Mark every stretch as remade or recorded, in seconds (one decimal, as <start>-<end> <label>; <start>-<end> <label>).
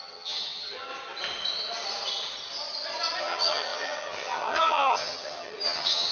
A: 0.0-0.9 remade; 0.9-3.2 recorded; 3.2-6.1 remade